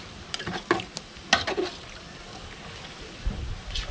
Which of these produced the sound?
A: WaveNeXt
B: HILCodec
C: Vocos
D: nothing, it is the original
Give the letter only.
D